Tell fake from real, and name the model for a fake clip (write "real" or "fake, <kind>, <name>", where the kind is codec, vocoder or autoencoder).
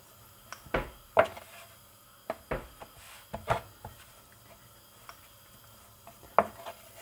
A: real